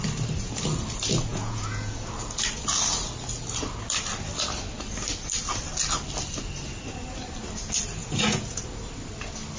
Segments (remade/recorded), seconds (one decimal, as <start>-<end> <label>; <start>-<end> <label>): 0.0-1.3 recorded; 1.3-2.1 remade; 2.1-8.0 recorded; 8.0-8.6 remade; 8.6-9.6 recorded